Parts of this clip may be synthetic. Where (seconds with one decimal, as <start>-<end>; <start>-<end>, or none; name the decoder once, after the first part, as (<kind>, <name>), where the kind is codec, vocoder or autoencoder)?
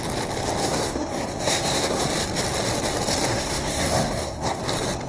0.6-2.0 (codec, SNAC); 3.3-4.6